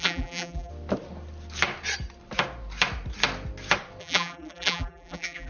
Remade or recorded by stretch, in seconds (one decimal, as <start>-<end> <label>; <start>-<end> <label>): 0.0-0.7 remade; 0.7-4.0 recorded; 4.0-5.5 remade